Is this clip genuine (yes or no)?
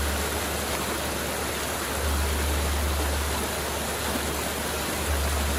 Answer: yes